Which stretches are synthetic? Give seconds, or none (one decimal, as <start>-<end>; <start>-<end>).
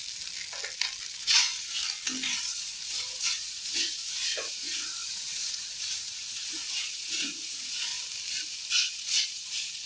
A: 1.2-1.8; 2.4-7.9; 8.7-9.9